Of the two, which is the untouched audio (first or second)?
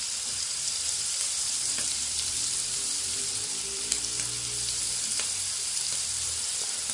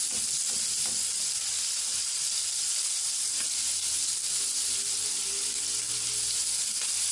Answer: second